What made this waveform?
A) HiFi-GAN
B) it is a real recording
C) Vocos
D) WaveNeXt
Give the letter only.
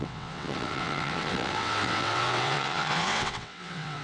D